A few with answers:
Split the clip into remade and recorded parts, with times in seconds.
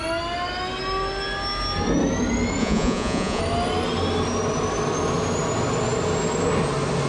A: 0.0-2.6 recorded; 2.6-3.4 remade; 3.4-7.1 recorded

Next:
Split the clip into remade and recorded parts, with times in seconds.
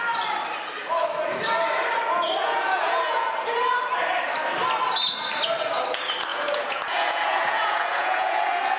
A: 0.0-2.4 recorded; 2.4-3.3 remade; 3.3-6.3 recorded; 6.3-8.8 remade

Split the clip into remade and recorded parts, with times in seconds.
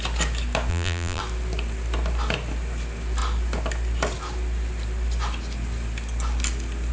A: 0.0-0.7 recorded; 0.7-1.2 remade; 1.2-6.9 recorded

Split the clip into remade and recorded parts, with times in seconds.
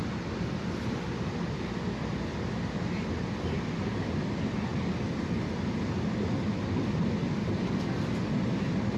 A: 0.0-9.0 recorded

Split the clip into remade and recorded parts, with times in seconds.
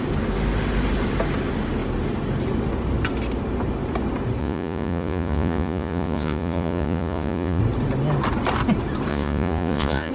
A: 0.0-4.4 recorded; 4.4-7.6 remade; 7.6-9.1 recorded; 9.1-10.1 remade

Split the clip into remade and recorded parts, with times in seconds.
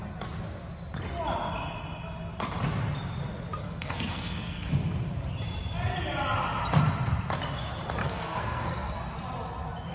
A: 0.0-3.6 recorded; 3.6-4.7 remade; 4.7-8.0 recorded; 8.0-9.0 remade; 9.0-9.9 recorded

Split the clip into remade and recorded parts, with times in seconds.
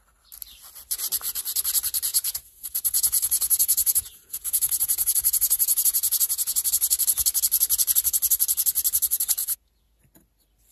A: 0.0-2.1 recorded; 2.1-6.7 remade; 6.7-9.4 recorded; 9.4-10.0 remade; 10.0-10.7 recorded